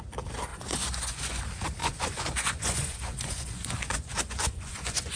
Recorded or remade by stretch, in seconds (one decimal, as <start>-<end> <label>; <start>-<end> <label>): 0.0-0.5 recorded; 0.5-1.4 remade; 1.4-1.8 recorded; 1.8-5.2 remade